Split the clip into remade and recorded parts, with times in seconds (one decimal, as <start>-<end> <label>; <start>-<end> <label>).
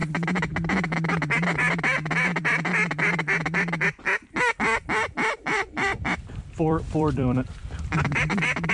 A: 0.0-4.8 recorded; 4.8-8.7 remade